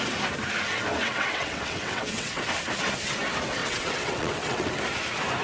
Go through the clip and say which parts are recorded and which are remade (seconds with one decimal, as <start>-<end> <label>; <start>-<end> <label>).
0.0-1.0 recorded; 1.0-2.4 remade; 2.4-3.6 recorded; 3.6-4.8 remade; 4.8-5.4 recorded